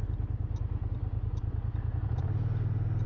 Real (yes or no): yes